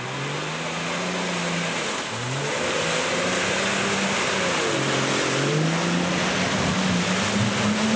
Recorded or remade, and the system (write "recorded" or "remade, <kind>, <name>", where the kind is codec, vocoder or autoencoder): recorded